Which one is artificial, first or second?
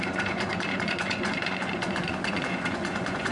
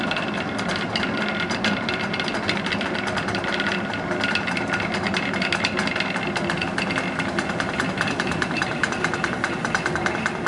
first